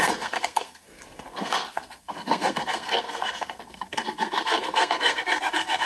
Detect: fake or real fake